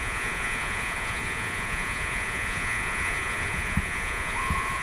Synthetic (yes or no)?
yes